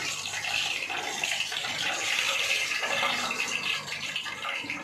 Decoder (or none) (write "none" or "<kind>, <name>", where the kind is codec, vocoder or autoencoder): vocoder, BigVGAN v2